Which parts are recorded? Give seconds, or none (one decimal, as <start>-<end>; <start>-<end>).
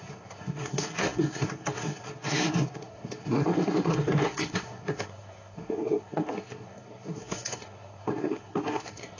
none